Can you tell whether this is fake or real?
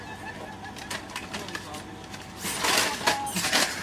real